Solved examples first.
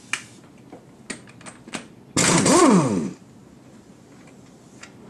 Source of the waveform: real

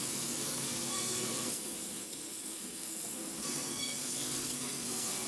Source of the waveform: fake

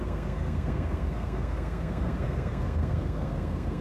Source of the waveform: fake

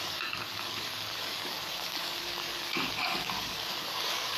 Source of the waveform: fake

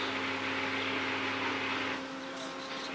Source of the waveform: real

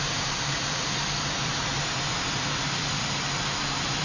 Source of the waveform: fake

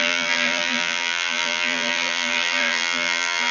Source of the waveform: fake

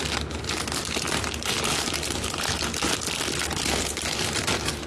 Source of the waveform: real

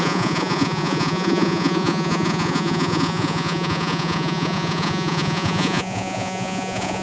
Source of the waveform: fake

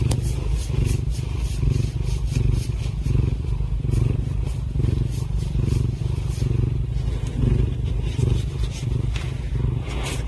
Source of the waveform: real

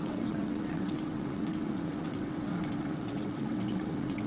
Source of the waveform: fake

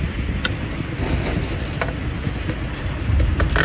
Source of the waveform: real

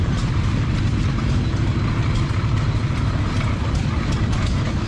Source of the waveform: real